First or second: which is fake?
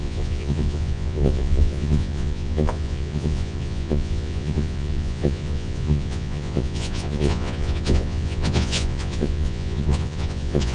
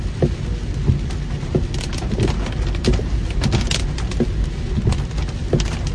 first